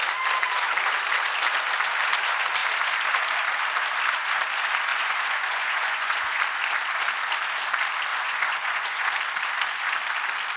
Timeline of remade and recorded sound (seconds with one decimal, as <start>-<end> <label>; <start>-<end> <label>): 0.0-4.9 recorded; 4.9-6.4 remade; 6.4-8.1 recorded; 8.1-9.1 remade; 9.1-10.6 recorded